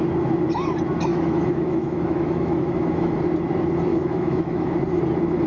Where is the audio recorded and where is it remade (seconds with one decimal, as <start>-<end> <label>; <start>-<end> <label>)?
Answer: 0.0-1.1 recorded; 1.1-3.2 remade; 3.2-3.9 recorded; 3.9-4.7 remade; 4.7-5.5 recorded